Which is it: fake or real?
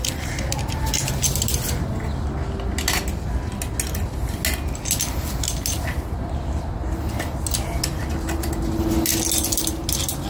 real